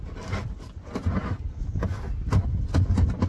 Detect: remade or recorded recorded